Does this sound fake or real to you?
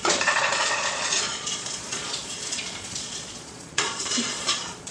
fake